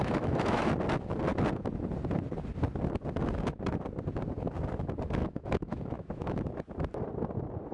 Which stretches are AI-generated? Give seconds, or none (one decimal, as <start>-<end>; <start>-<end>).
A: 0.0-0.7; 5.2-6.4